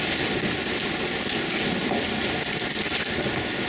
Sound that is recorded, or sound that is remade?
recorded